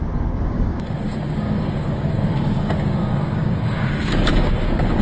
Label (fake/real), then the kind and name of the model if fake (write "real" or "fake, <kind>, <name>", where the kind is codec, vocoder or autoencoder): fake, codec, DAC